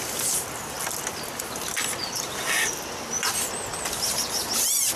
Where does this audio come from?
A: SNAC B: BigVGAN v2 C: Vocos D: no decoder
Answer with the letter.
D